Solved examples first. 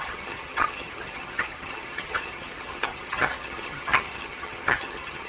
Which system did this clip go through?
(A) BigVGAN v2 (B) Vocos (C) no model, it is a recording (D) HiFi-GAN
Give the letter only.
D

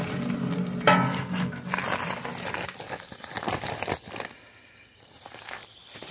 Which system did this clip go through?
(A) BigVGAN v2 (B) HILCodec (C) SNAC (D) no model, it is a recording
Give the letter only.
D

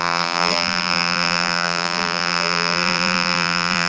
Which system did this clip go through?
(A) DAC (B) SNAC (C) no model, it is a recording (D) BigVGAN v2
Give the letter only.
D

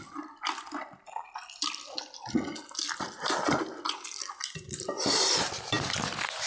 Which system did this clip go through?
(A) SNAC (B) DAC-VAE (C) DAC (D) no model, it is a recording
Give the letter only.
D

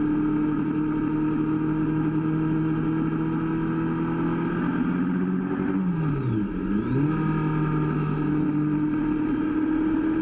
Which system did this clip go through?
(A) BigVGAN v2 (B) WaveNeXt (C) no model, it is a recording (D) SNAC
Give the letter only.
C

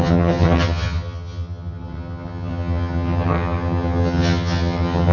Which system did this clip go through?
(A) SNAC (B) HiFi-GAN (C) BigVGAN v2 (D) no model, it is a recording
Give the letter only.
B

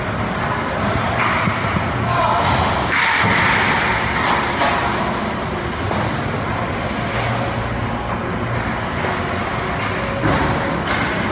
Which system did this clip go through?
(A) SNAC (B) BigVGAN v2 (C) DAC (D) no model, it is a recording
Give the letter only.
D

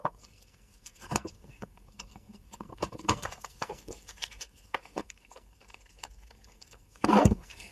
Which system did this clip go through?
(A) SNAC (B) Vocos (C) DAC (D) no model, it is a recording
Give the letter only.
A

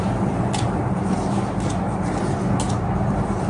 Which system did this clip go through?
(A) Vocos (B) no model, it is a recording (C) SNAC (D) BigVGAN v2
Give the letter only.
B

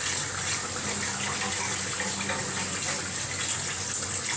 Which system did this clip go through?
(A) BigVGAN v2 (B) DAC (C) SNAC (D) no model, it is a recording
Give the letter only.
D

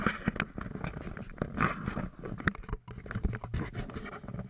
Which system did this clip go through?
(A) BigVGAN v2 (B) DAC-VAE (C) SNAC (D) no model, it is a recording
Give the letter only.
D